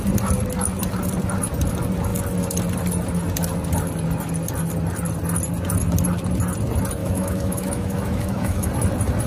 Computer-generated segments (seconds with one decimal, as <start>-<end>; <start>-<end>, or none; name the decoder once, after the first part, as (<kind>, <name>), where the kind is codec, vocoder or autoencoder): 7.0-8.7 (autoencoder, DAC-VAE)